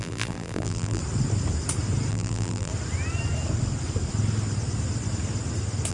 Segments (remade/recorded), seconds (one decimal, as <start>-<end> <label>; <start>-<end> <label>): 0.0-1.0 remade; 1.0-2.1 recorded; 2.1-2.7 remade; 2.7-5.9 recorded